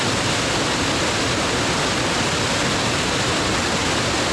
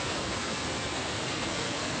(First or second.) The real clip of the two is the first